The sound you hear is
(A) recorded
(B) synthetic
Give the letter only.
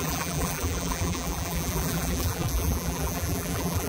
B